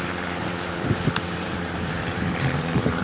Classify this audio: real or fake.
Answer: fake